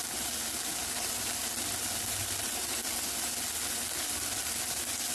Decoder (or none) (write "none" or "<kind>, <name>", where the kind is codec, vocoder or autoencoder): none